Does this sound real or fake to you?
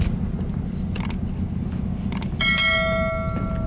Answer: real